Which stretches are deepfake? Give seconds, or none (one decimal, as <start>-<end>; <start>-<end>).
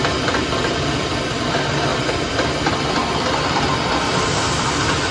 1.9-2.6